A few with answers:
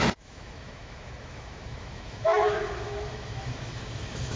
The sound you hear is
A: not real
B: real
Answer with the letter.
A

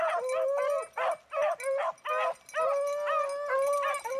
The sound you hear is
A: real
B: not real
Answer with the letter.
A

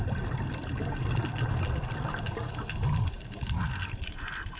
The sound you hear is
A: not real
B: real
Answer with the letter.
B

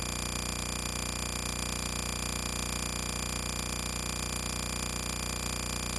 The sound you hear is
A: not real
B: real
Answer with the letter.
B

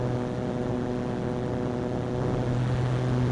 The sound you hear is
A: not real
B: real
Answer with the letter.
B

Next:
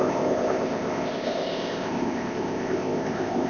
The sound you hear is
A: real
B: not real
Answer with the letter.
B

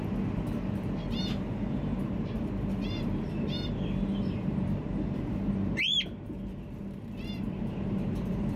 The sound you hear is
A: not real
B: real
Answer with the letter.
A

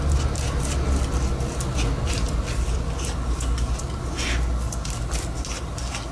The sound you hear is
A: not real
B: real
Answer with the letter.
B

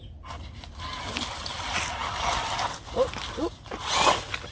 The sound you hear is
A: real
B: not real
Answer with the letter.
A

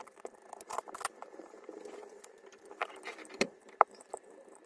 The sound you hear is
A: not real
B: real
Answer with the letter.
A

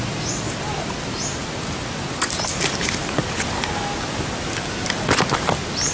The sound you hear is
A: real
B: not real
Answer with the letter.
A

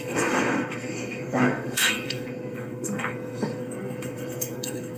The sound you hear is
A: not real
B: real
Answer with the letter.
A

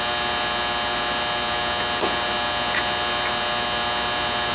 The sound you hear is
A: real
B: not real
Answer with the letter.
A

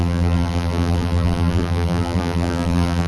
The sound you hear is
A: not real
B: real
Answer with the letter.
A